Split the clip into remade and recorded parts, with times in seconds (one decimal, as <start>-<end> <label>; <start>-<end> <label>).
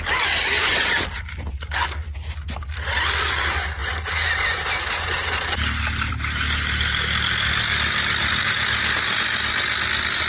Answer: 0.0-10.3 recorded